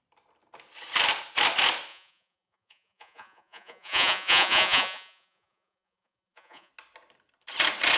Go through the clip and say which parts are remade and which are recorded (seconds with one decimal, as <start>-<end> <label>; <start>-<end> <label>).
0.0-1.9 recorded; 1.9-6.7 remade; 6.7-8.0 recorded